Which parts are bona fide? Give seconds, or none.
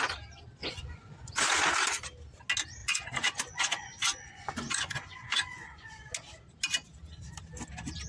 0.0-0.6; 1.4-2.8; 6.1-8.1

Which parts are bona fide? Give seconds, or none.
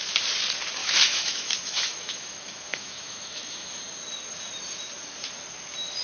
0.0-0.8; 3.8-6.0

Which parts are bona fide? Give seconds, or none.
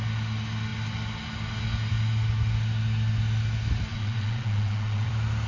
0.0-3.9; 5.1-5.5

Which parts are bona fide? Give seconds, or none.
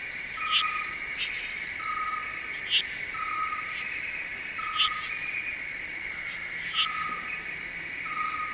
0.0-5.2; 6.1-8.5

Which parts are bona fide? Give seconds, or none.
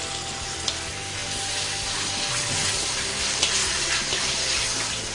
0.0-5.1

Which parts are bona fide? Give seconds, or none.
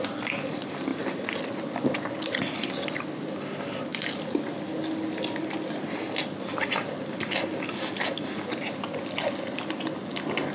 0.0-10.5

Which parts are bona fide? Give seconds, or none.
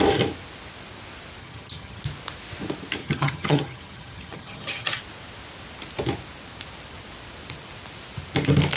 0.0-1.4; 2.0-3.0; 5.0-8.8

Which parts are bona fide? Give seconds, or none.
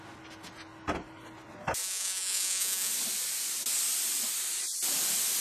0.0-1.8; 2.9-5.4